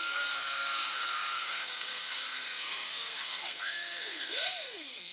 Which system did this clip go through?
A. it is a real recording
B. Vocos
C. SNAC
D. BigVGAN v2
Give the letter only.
C